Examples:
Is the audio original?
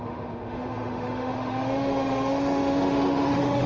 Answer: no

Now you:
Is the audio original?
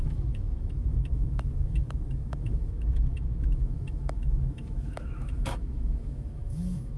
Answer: no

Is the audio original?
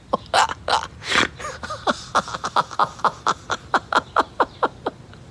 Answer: yes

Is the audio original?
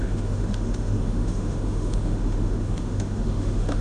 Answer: no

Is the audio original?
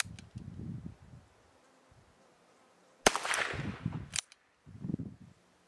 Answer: yes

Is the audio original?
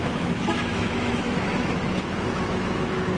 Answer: no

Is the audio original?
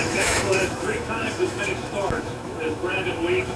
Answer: no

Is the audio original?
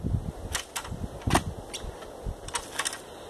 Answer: yes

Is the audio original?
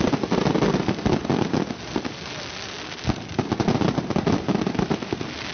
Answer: yes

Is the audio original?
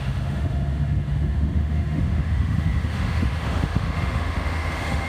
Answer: no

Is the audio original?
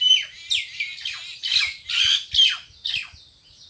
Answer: yes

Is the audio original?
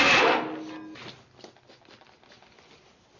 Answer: yes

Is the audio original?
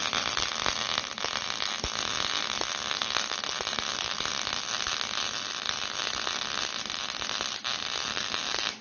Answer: yes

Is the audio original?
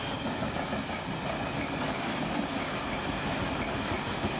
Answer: yes